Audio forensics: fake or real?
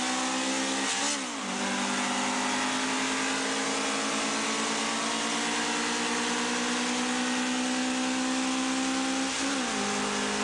real